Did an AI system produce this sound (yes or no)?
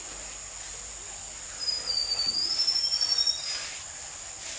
no